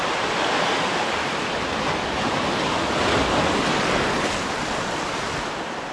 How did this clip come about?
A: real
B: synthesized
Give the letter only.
A